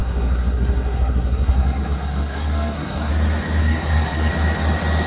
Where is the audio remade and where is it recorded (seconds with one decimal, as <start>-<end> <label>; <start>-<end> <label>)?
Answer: 0.0-3.1 remade; 3.1-3.6 recorded; 3.6-4.3 remade; 4.3-5.1 recorded